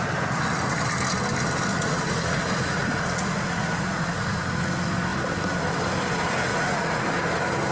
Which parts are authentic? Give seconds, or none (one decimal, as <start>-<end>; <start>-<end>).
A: 0.0-1.7; 4.4-6.5; 7.1-7.7